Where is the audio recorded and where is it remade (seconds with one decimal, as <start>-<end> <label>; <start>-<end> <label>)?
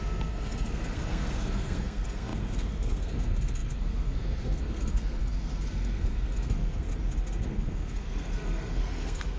0.0-6.9 remade; 6.9-7.4 recorded; 7.4-9.4 remade